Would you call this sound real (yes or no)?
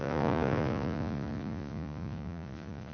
no